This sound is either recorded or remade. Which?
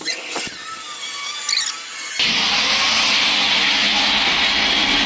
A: recorded